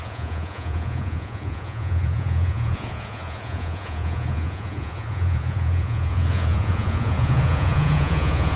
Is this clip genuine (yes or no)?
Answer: no